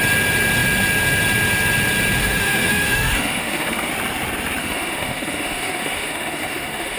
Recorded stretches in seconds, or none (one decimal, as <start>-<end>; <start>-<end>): 0.0-2.2; 3.9-4.6

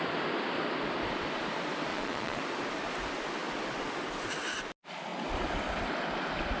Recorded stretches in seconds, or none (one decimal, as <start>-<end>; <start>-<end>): 0.0-1.9; 2.4-6.6